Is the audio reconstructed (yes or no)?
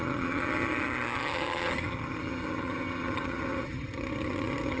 yes